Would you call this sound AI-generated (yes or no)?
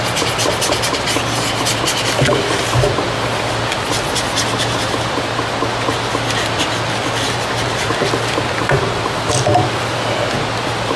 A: no